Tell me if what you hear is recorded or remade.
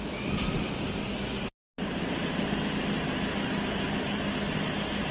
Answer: recorded